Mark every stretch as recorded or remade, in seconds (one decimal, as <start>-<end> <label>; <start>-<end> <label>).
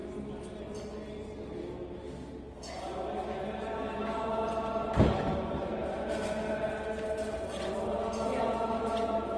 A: 0.0-9.4 recorded